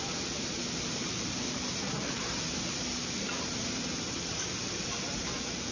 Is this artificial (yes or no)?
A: yes